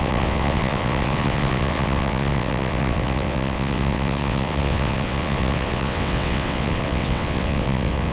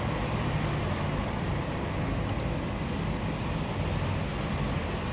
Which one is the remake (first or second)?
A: first